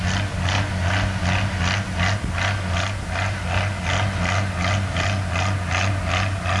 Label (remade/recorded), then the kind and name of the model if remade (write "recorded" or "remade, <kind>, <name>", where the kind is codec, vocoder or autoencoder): recorded